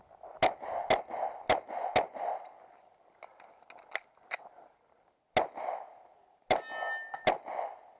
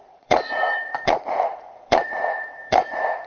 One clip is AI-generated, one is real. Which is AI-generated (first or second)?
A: second